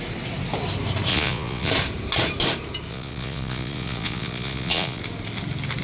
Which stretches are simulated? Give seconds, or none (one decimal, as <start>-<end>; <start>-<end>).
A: 1.1-1.7; 2.9-5.0